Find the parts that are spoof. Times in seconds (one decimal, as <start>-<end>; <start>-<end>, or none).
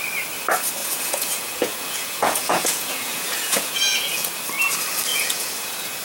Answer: 0.8-4.4; 5.1-6.0